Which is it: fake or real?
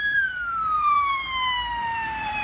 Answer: fake